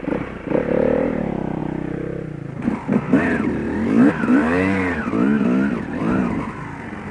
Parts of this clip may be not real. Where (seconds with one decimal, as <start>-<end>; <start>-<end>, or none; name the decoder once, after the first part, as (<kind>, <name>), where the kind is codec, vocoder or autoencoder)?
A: 0.0-1.6 (vocoder, BigVGAN v2); 4.1-5.0; 6.0-7.1